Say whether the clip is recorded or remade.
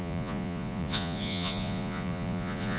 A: remade